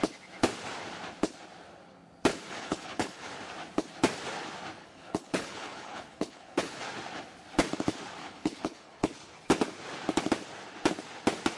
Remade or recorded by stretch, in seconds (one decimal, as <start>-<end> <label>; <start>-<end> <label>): 0.0-2.3 recorded; 2.3-3.3 remade; 3.3-4.8 recorded; 4.8-6.9 remade; 6.9-8.2 recorded; 8.2-9.0 remade; 9.0-11.6 recorded